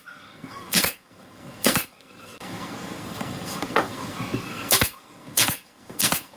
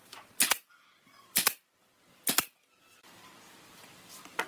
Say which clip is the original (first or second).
second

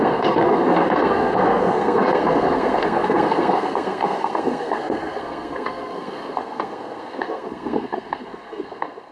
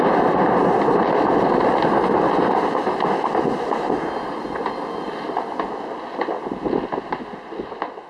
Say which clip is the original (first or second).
second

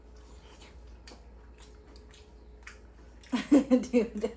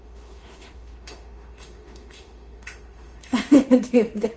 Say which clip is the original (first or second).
first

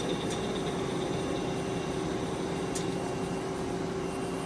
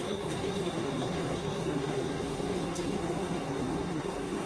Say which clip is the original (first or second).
first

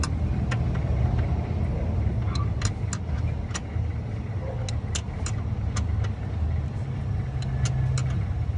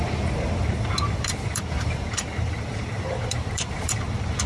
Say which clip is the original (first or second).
first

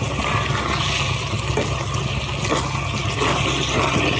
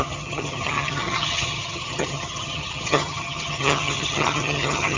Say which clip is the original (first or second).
first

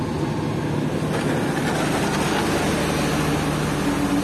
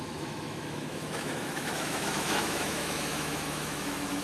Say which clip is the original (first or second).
first